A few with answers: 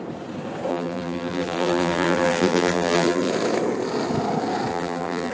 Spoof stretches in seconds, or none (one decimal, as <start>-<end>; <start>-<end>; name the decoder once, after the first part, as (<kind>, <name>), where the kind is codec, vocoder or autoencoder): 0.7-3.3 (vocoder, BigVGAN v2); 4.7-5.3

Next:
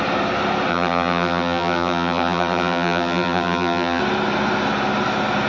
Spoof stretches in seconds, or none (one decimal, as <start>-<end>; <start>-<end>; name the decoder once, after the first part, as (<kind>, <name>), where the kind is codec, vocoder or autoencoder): 0.7-4.0 (vocoder, BigVGAN v2)

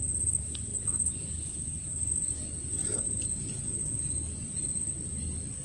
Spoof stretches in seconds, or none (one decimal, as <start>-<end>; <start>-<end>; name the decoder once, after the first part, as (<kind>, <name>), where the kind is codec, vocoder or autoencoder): 0.7-2.1 (vocoder, BigVGAN v2)